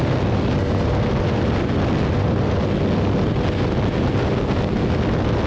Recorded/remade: recorded